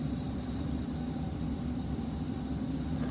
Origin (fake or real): real